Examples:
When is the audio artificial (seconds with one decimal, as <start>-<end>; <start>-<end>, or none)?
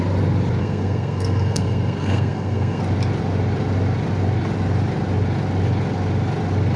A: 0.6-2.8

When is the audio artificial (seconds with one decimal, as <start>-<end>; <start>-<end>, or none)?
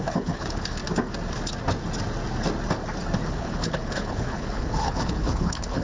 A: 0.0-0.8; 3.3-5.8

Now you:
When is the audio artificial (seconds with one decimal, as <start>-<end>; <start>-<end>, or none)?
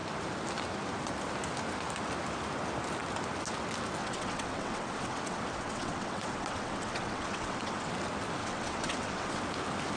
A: 4.0-7.9; 8.4-9.4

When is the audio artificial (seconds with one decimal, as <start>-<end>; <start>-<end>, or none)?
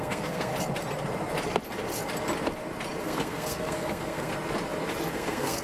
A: 0.0-0.5; 3.0-4.3; 5.1-5.6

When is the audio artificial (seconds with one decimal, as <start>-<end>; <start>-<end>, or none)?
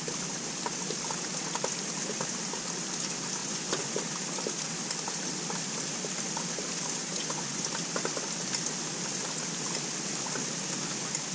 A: 3.4-3.9; 7.0-7.6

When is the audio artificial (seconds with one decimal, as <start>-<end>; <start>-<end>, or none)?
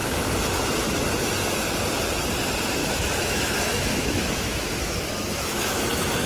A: 2.8-6.3